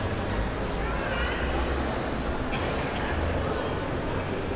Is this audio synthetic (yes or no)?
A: no